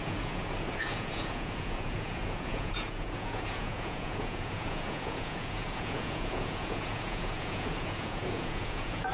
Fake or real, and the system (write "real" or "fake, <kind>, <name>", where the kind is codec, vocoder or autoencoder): fake, vocoder, Vocos